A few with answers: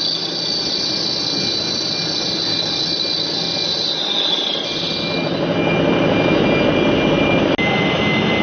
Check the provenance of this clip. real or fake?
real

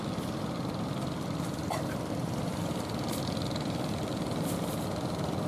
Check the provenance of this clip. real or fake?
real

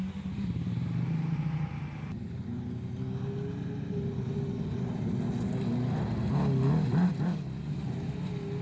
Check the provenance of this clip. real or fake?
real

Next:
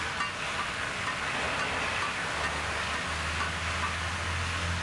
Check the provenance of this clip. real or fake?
real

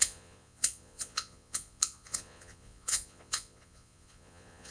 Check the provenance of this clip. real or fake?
fake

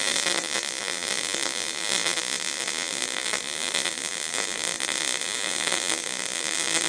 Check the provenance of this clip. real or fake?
real